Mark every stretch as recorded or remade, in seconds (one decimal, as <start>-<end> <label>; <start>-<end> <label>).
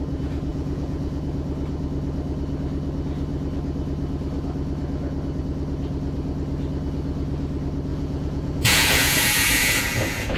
0.0-0.5 recorded; 0.5-1.2 remade; 1.2-7.9 recorded; 7.9-10.4 remade